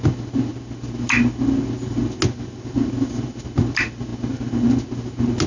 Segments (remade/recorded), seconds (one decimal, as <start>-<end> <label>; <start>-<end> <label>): 0.0-5.5 recorded

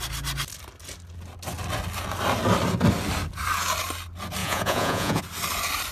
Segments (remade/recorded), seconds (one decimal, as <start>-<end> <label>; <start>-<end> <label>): 0.0-4.4 recorded; 4.4-5.2 remade; 5.2-5.9 recorded

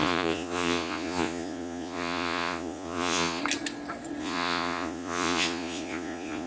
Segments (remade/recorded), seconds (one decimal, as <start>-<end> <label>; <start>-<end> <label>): 0.0-3.4 remade; 3.4-4.2 recorded; 4.2-6.5 remade

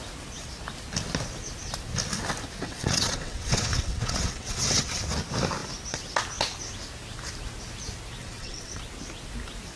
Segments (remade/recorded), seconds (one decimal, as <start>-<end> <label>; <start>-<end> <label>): 0.0-2.6 recorded; 2.6-5.0 remade; 5.0-8.2 recorded; 8.2-8.8 remade; 8.8-9.8 recorded

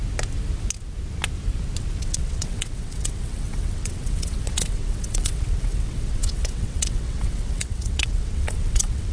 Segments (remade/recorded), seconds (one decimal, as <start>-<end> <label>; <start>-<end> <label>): 0.0-2.0 recorded; 2.0-9.1 remade